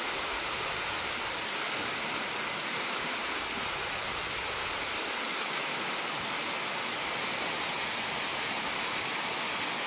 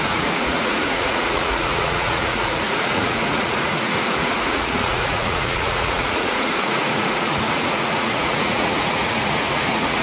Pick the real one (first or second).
first